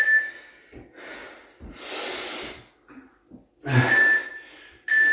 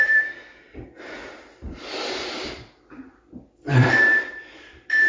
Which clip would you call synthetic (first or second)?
second